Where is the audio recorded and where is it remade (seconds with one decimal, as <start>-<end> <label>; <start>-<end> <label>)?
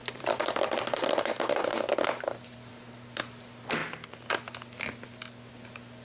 0.0-2.7 remade; 2.7-6.0 recorded